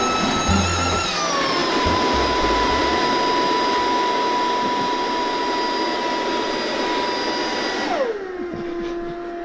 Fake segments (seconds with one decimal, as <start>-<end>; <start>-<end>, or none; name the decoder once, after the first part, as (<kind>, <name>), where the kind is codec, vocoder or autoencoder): 1.6-3.1 (vocoder, BigVGAN v2)